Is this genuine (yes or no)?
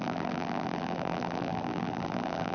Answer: no